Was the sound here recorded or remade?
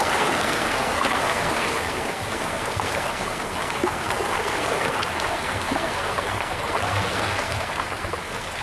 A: remade